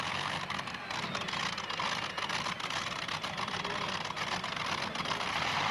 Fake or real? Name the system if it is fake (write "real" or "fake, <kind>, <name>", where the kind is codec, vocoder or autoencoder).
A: real